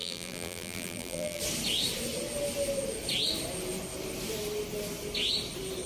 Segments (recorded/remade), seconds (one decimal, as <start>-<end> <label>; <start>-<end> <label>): 0.0-1.4 remade; 1.4-5.9 recorded